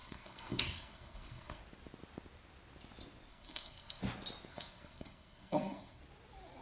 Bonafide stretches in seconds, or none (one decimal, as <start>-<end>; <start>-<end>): 1.6-3.3; 4.0-4.5; 6.0-6.6